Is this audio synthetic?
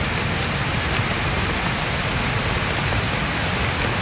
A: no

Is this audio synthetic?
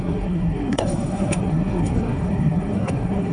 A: yes